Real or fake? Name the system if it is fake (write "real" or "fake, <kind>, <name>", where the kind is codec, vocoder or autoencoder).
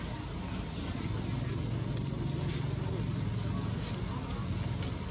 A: real